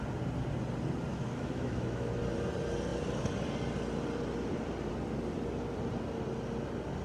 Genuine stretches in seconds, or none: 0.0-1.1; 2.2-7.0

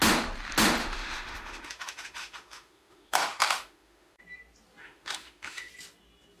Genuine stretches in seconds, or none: 0.0-0.8; 4.2-4.8; 5.7-6.4

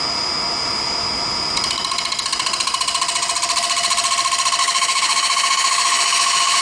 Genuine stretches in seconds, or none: 0.0-4.6

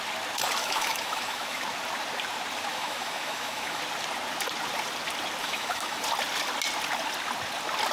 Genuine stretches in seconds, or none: 0.0-0.6; 1.6-2.7; 3.8-5.4; 6.0-7.9

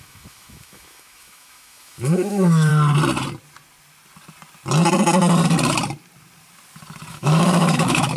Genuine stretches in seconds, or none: 2.7-7.1

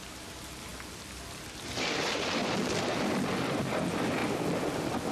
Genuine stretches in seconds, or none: 0.0-5.1

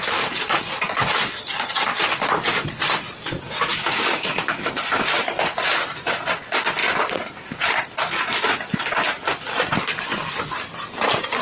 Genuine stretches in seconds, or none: 0.0-3.7; 4.7-11.4

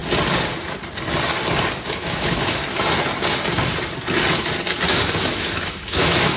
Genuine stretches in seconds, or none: 0.0-1.9; 2.6-4.9